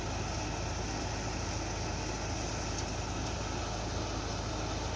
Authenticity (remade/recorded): recorded